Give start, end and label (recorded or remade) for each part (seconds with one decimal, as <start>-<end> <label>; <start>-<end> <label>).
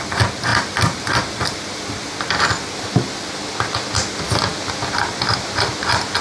0.0-0.5 recorded; 0.5-2.5 remade; 2.5-6.2 recorded